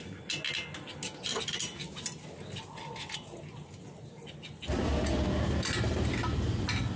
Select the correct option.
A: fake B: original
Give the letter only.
B